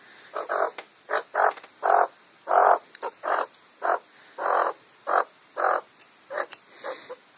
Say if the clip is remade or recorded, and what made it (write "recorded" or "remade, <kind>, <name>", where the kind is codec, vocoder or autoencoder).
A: recorded